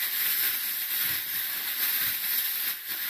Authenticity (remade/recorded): recorded